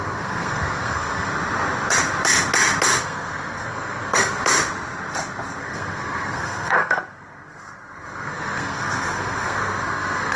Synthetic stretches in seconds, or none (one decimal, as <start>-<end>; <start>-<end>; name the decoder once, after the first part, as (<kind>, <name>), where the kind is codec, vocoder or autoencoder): 0.0-1.3 (codec, SNAC); 3.0-4.4; 5.6-10.4